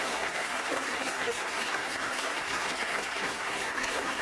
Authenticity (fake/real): fake